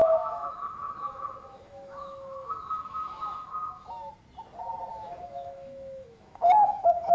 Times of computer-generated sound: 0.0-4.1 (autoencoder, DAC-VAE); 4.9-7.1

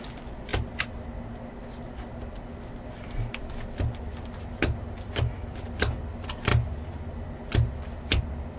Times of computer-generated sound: none